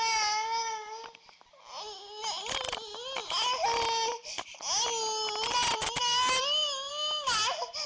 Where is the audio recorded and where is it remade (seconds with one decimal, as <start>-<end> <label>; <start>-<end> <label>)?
0.0-7.9 recorded